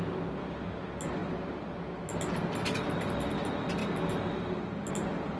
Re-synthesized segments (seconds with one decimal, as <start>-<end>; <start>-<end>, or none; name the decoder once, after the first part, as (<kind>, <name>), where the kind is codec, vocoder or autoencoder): none